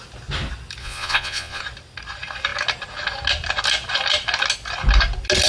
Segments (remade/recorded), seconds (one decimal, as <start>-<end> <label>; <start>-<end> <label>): 0.0-0.8 recorded; 0.8-1.6 remade; 1.6-5.5 recorded